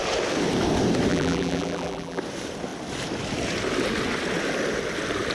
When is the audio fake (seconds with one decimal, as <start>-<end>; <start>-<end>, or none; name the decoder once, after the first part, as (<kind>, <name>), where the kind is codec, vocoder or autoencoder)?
1.1-2.2 (vocoder, BigVGAN v2)